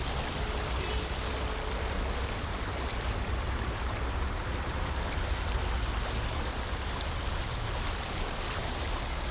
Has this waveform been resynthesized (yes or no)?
no